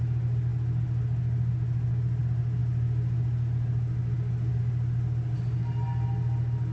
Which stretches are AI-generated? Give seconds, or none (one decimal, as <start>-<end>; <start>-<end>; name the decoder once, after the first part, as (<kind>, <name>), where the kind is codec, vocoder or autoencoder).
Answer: none